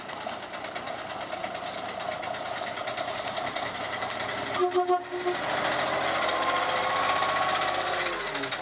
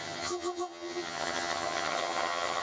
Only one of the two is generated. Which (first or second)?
second